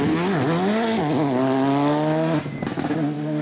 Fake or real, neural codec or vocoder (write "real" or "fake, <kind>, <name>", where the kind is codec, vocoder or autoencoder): real